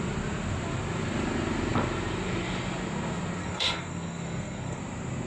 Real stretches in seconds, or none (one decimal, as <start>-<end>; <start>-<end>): 0.0-3.4; 4.8-5.3